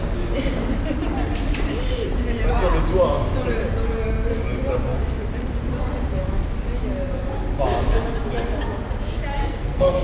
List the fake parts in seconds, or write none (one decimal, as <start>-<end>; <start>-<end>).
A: 9.4-10.0

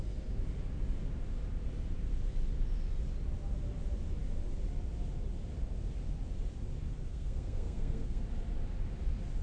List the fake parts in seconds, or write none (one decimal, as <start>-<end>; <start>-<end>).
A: 7.1-8.2